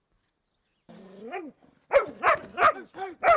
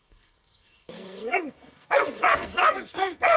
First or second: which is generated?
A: second